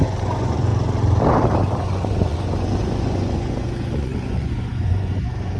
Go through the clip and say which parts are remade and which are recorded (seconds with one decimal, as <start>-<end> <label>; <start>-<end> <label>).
0.0-0.7 remade; 0.7-1.8 recorded; 1.8-5.6 remade